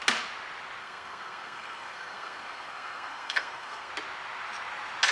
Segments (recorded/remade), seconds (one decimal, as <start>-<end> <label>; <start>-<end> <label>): 0.0-0.8 recorded; 0.8-3.9 remade; 3.9-5.1 recorded